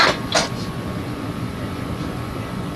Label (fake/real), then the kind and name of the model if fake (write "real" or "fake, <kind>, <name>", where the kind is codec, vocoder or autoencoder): fake, vocoder, Vocos